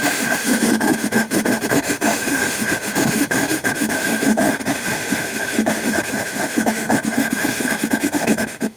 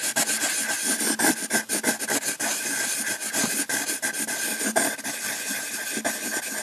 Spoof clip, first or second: first